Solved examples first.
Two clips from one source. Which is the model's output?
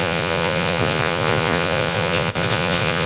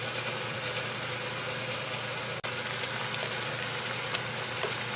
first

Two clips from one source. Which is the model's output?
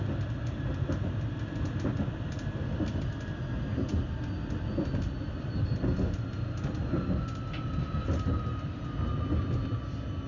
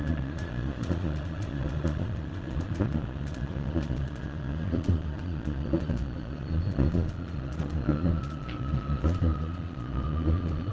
second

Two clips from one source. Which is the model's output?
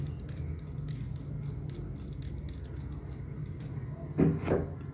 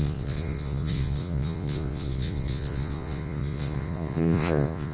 second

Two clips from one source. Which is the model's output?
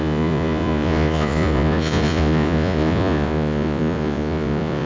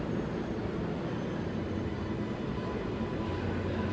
first